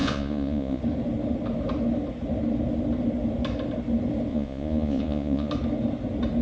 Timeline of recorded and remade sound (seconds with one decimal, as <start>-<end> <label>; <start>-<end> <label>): 0.0-0.8 remade; 0.8-4.3 recorded; 4.3-5.5 remade; 5.5-6.4 recorded